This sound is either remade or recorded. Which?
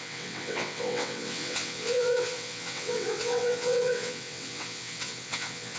remade